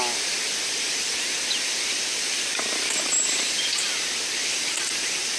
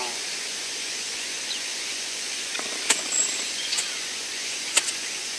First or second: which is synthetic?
second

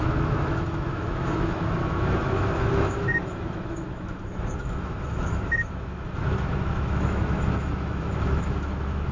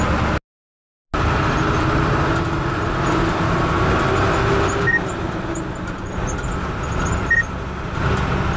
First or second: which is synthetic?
first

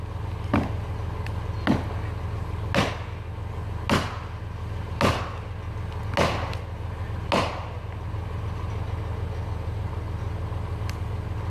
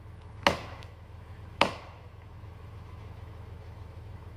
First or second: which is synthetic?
second